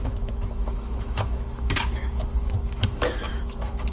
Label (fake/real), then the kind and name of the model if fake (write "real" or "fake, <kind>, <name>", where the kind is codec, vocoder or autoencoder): fake, autoencoder, DAC-VAE